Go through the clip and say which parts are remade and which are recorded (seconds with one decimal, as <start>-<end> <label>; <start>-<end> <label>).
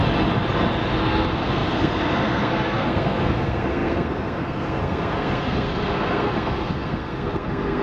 0.0-1.0 recorded; 1.0-7.8 remade